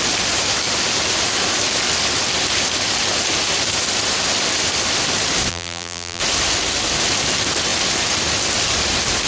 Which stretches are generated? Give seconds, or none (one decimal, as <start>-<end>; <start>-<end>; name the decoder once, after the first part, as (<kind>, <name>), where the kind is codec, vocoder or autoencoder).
5.5-6.2 (vocoder, BigVGAN v2)